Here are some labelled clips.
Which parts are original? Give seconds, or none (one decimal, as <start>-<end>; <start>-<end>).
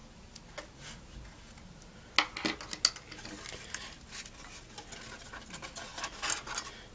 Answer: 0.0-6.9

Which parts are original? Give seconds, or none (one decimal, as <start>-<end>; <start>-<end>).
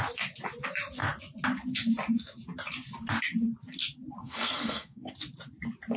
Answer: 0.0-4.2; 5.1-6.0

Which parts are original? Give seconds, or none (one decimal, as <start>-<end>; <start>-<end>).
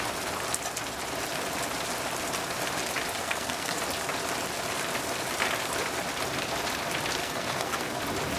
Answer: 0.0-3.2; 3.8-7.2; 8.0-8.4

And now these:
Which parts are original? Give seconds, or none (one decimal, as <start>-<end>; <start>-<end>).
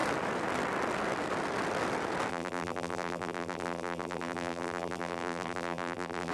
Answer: 0.0-2.3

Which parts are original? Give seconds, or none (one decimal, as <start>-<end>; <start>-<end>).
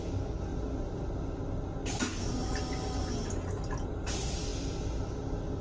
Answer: 0.0-5.6